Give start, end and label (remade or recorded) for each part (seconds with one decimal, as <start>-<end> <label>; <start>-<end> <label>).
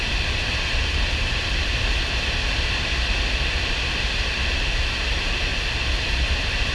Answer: 0.0-1.7 remade; 1.7-4.0 recorded; 4.0-5.5 remade; 5.5-6.0 recorded; 6.0-6.7 remade